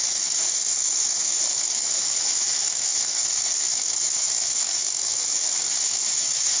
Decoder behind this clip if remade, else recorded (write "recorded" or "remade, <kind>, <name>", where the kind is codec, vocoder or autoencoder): remade, autoencoder, DAC-VAE